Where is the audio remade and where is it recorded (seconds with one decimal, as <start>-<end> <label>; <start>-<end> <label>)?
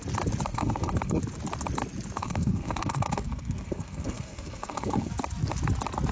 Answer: 0.0-0.5 recorded; 0.5-1.2 remade; 1.2-2.2 recorded; 2.2-5.1 remade; 5.1-6.1 recorded